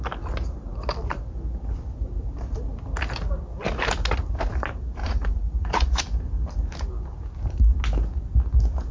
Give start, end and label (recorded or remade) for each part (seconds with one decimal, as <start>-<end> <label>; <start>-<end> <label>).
0.0-5.0 recorded; 5.0-6.0 remade; 6.0-8.9 recorded